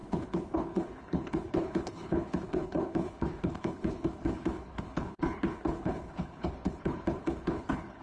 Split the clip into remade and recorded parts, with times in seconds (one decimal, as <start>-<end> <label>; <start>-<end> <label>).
0.0-8.0 remade